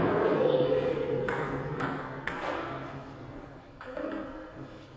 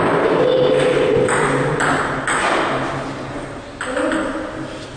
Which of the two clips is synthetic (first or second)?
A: first